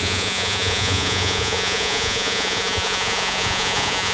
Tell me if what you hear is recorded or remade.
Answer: remade